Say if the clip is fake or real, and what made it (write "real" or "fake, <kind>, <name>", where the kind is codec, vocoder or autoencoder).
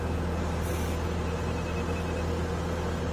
real